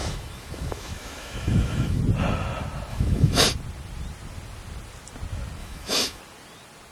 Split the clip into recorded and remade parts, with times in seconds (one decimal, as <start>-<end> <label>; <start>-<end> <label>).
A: 0.0-2.0 remade; 2.0-2.9 recorded; 2.9-3.4 remade; 3.4-5.6 recorded; 5.6-6.2 remade; 6.2-6.9 recorded